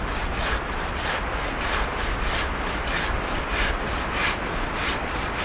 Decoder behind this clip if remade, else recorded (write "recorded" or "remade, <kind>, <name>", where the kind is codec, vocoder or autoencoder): recorded